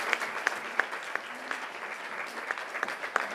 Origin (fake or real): real